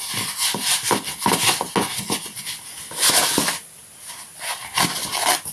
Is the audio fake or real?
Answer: real